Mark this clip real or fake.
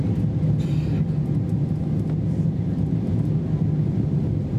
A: real